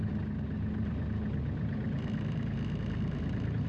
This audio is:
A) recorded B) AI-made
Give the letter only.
A